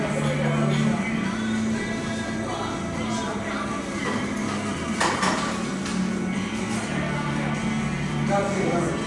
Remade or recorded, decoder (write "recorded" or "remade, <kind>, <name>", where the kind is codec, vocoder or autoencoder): recorded